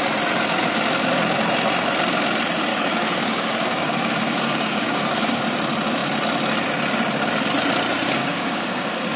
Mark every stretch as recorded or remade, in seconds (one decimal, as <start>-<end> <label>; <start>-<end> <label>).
0.0-2.7 recorded; 2.7-5.4 remade; 5.4-8.2 recorded; 8.2-9.2 remade